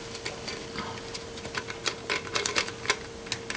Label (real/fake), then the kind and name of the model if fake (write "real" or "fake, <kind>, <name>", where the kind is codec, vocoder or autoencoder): real